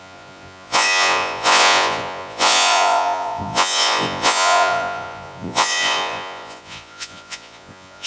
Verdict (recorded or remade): remade